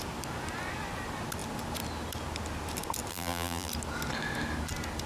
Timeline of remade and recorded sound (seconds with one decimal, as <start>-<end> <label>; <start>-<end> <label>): 0.0-3.1 recorded; 3.1-3.7 remade; 3.7-5.1 recorded